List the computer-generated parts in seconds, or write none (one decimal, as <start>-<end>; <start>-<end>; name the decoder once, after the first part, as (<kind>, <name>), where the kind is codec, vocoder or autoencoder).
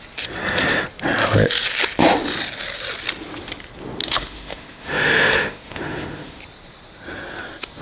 4.0-6.4 (autoencoder, DAC-VAE)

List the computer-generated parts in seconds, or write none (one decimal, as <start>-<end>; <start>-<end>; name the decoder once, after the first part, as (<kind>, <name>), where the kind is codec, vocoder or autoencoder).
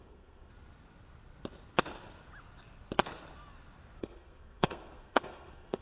0.0-0.5 (codec, SNAC); 4.0-5.8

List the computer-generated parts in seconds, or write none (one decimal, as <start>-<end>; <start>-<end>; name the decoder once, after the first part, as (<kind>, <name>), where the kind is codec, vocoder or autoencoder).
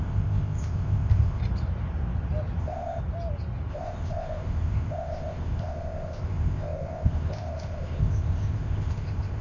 0.0-1.4 (codec, ZipCodec); 2.6-3.0; 3.7-9.4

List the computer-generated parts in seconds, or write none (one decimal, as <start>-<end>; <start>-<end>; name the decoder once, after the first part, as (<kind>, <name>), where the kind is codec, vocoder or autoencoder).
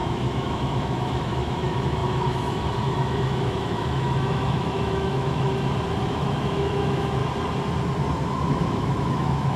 0.0-5.5 (autoencoder, DAC-VAE); 6.0-7.2; 8.5-9.6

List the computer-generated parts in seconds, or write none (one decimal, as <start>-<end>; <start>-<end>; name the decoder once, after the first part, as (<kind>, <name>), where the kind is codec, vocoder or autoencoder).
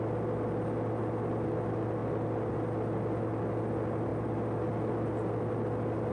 none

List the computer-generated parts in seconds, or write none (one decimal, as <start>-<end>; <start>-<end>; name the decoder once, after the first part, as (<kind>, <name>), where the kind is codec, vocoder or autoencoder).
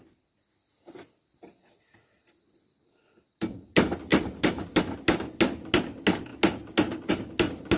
4.1-4.8 (vocoder, BigVGAN v2)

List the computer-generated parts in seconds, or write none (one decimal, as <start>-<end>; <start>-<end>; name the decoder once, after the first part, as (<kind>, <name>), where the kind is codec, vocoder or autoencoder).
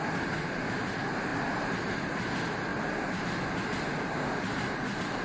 none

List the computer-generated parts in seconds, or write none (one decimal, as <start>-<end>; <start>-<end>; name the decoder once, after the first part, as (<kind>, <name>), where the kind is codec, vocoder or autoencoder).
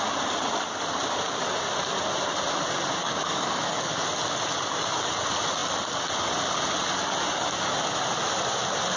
3.0-3.9 (codec, DAC)